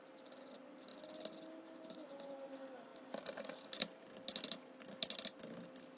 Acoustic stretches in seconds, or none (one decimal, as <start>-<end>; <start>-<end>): 0.0-6.0